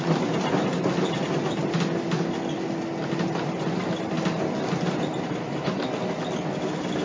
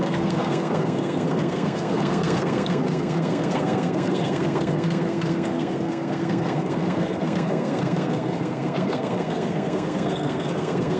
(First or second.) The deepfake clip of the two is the second